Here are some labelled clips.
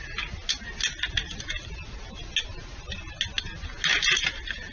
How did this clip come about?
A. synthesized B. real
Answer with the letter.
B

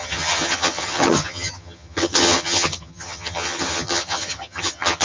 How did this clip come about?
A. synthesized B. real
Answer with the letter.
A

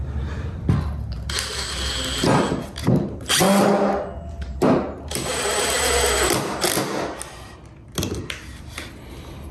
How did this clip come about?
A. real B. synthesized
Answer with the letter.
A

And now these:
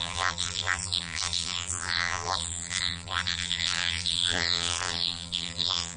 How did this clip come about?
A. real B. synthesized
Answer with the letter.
B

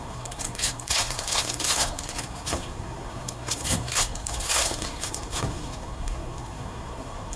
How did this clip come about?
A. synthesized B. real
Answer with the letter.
A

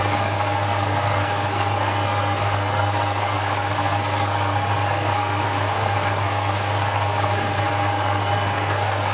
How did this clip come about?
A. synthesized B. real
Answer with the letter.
A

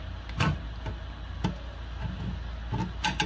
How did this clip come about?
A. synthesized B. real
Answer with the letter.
B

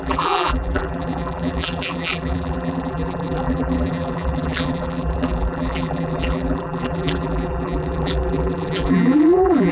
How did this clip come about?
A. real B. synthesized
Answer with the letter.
B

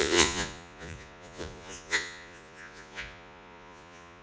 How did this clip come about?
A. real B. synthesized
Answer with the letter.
B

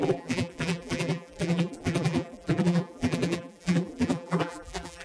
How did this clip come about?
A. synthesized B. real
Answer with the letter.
A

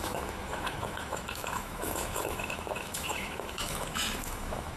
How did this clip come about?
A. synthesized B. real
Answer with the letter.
A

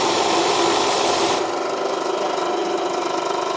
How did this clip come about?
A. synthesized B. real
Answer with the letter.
B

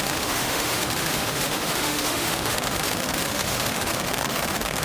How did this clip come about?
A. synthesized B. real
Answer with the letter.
A